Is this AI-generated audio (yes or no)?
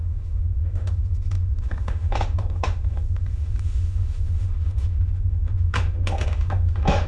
yes